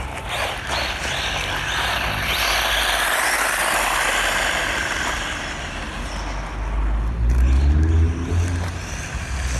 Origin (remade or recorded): recorded